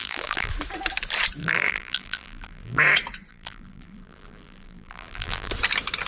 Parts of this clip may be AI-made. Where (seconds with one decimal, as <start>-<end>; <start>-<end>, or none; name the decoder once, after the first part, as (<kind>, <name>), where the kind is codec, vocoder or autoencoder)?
0.0-0.5 (vocoder, BigVGAN v2); 1.4-2.8; 3.3-5.5